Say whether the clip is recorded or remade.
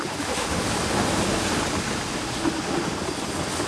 recorded